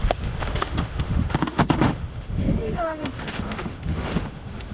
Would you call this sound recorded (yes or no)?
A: no